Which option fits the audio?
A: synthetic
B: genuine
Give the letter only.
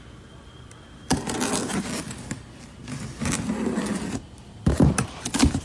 B